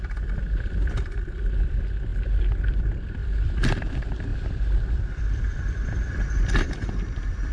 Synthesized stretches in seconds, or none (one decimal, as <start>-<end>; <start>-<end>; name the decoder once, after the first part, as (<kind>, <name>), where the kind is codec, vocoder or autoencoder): 0.0-7.5 (vocoder, BigVGAN v2)